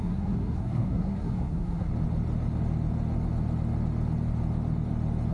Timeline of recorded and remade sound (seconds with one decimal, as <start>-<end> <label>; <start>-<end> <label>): 0.0-1.9 remade; 1.9-5.3 recorded